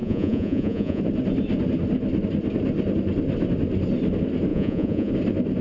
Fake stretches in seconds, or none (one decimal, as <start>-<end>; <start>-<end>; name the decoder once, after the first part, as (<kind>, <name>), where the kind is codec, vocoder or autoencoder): 0.0-1.0 (vocoder, Vocos); 4.5-5.1